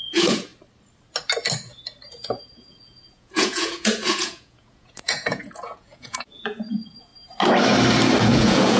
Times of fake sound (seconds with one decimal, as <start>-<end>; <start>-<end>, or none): 0.0-0.5; 2.1-7.1; 8.2-8.8